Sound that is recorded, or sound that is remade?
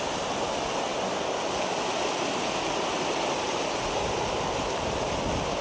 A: recorded